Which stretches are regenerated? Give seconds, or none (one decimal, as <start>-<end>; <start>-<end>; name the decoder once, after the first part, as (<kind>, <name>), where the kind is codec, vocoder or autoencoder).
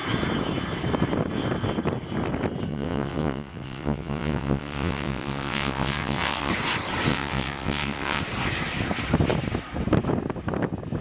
2.7-6.5 (vocoder, WaveNeXt); 7.1-8.2